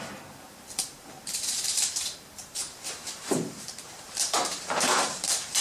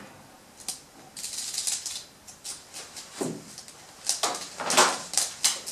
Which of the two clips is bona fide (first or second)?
second